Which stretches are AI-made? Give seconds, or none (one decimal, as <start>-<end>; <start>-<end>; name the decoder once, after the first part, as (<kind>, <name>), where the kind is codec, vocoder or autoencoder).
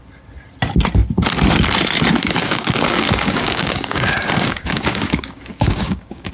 2.4-6.3 (codec, DAC)